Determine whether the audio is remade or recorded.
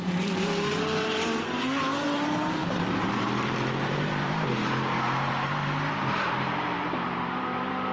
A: remade